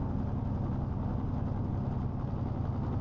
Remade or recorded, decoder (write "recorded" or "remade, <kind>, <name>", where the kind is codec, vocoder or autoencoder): recorded